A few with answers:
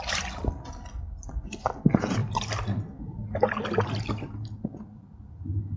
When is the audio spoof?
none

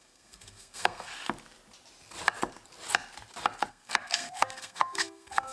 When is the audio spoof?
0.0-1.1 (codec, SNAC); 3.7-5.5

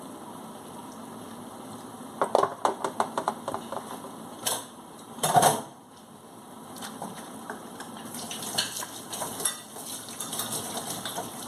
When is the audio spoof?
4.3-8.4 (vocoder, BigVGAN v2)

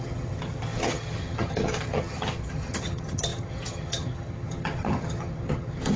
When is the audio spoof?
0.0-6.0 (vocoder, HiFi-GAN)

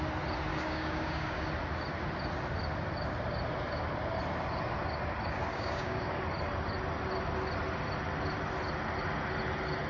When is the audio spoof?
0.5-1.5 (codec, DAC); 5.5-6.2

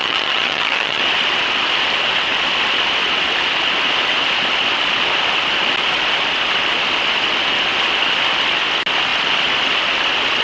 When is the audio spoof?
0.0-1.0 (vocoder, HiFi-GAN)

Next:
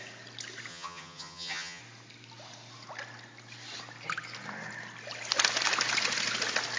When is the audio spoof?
0.7-1.8 (vocoder, HiFi-GAN)

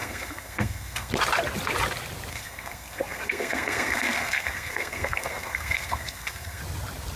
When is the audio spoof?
0.0-1.1 (codec, SNAC); 2.3-6.6